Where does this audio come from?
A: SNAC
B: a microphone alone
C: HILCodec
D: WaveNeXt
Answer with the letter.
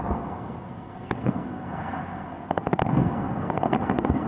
A